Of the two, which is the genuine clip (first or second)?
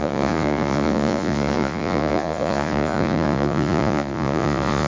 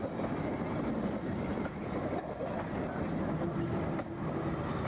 second